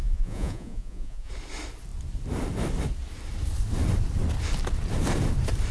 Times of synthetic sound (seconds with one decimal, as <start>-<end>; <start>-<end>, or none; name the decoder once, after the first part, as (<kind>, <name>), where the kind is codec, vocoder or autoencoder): 0.0-1.3 (vocoder, Vocos)